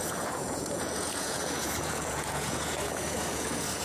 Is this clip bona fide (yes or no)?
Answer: no